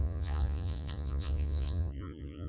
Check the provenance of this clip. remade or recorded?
remade